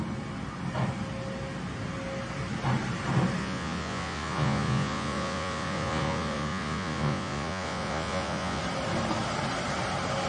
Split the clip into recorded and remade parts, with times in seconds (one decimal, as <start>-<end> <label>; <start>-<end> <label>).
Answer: 0.0-3.4 recorded; 3.4-8.6 remade; 8.6-10.3 recorded